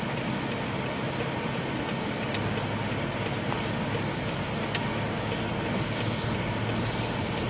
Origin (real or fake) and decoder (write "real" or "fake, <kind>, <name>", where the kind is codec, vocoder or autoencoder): real